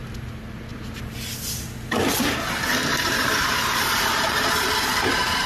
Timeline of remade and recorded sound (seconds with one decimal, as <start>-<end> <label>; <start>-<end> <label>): 0.0-2.9 recorded; 2.9-5.5 remade